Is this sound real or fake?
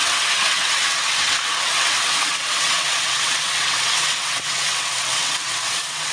fake